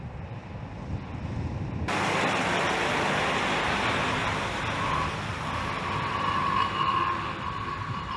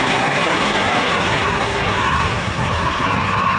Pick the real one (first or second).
first